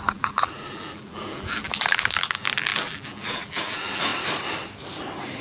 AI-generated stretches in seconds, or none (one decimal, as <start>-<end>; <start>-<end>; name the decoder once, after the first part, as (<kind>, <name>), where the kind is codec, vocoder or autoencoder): 0.0-4.1 (vocoder, BigVGAN v2)